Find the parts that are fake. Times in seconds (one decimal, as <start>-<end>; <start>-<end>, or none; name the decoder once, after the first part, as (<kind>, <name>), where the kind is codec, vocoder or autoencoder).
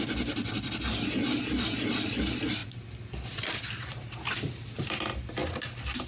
none